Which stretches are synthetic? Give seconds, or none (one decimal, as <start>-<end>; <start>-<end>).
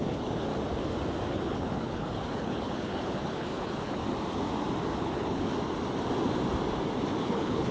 0.0-0.5; 1.3-4.0; 5.0-5.5; 7.2-7.7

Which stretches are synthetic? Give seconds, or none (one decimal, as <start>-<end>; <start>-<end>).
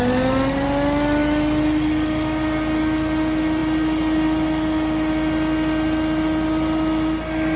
none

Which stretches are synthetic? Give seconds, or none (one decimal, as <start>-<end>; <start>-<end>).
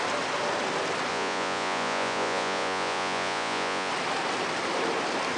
1.1-3.9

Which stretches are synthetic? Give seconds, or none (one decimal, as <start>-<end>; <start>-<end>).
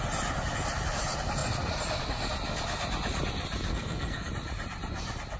3.7-4.3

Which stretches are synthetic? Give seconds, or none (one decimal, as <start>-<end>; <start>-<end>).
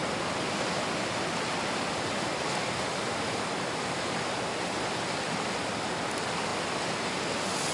none